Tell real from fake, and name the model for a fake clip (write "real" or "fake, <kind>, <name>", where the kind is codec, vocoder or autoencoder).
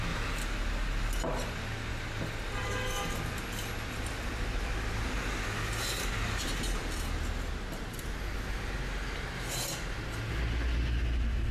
real